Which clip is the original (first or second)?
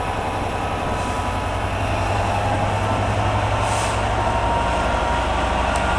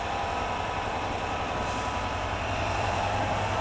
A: first